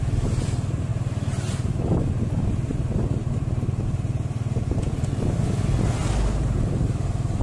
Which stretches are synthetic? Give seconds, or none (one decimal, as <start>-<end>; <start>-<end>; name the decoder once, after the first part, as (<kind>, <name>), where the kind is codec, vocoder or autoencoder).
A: 0.9-1.8 (vocoder, BigVGAN v2); 2.7-3.7; 6.0-7.4